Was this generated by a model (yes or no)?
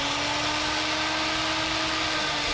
no